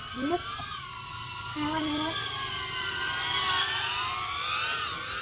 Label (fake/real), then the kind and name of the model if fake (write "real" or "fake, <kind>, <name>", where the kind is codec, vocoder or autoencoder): real